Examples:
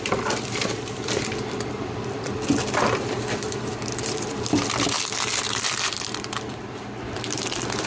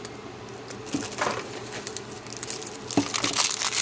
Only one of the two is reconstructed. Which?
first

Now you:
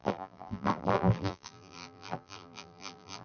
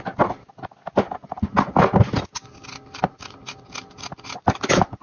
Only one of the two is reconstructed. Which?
first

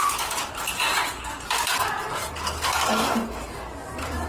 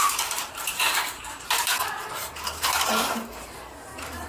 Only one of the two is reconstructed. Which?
second